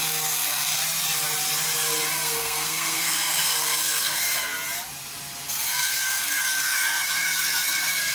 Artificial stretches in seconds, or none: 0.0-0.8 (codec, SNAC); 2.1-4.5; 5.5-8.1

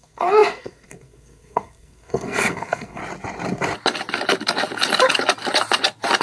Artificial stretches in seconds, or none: 0.0-3.0 (codec, SNAC)